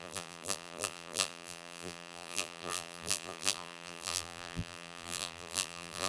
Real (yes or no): no